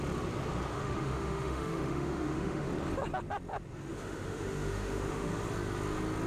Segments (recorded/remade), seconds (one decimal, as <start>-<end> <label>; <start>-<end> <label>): 0.0-0.7 recorded; 0.7-2.7 remade; 2.7-3.9 recorded; 3.9-5.3 remade; 5.3-6.3 recorded